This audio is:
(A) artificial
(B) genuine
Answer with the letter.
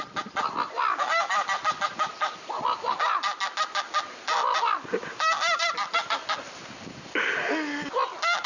B